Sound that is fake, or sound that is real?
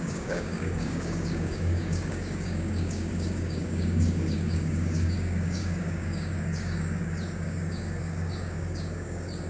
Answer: fake